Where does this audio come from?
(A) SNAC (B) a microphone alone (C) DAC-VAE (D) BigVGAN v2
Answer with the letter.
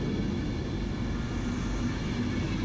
B